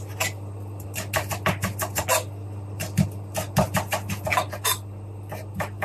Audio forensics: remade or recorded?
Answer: recorded